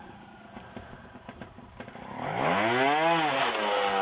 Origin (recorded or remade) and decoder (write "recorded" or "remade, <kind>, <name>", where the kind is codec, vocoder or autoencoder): recorded